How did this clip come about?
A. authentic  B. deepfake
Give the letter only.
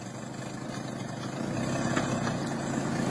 A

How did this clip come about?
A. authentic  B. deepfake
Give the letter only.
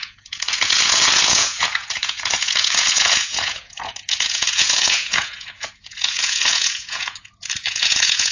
B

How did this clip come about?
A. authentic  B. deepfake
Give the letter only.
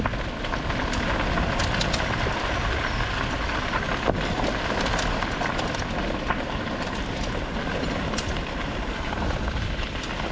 A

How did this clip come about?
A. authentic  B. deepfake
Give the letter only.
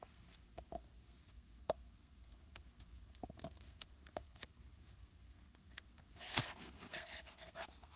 B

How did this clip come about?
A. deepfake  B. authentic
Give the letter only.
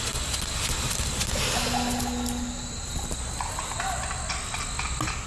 B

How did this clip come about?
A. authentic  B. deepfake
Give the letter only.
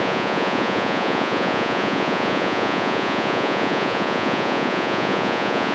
B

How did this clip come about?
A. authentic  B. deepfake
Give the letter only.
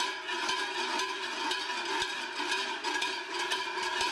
A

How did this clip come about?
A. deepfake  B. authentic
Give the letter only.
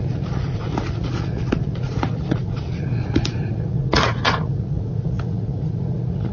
A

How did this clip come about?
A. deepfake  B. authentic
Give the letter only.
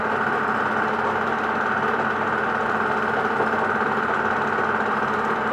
B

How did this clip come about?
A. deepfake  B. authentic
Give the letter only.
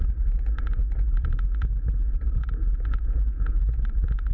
A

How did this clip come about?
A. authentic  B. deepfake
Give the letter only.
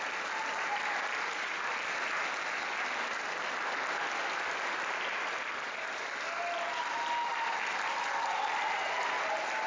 A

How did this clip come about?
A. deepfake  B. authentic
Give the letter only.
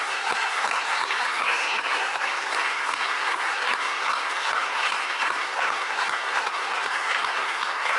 A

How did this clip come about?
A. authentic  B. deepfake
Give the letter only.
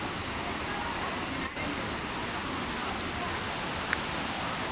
A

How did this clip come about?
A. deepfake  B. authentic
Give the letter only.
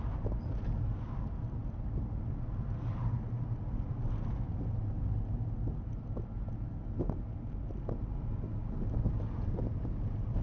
B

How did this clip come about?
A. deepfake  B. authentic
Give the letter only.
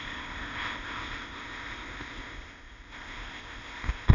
A